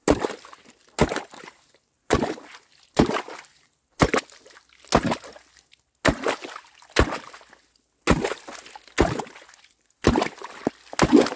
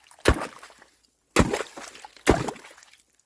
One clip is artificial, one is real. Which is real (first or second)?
first